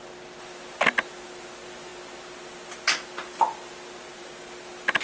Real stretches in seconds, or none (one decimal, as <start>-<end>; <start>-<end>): 0.0-5.0